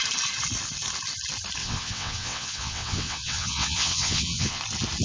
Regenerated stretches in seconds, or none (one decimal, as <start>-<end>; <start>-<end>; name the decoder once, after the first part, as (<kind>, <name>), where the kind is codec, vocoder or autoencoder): 1.6-4.6 (vocoder, WaveNeXt)